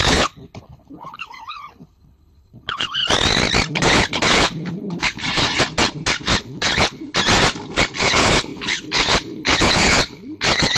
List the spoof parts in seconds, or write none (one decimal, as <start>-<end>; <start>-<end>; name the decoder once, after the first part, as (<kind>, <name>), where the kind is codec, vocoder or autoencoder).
0.0-3.0 (codec, HILCodec); 3.7-5.2; 6.4-7.0; 8.0-10.8